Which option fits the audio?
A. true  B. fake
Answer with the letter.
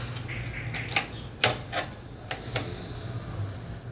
A